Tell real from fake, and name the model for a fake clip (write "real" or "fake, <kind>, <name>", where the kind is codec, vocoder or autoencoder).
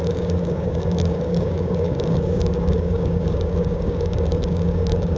fake, codec, DAC